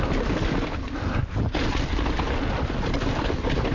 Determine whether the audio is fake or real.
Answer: real